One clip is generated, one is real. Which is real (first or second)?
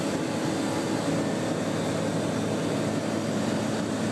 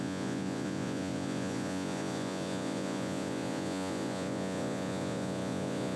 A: first